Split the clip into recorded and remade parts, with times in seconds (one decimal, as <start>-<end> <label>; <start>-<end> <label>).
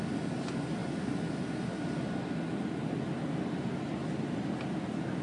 0.0-5.2 recorded